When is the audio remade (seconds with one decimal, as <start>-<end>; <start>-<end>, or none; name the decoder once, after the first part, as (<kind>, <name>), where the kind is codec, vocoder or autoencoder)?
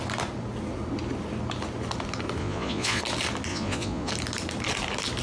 2.4-3.0 (vocoder, Vocos); 3.5-4.1